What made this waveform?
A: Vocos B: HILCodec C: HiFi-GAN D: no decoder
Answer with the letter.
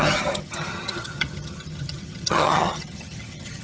C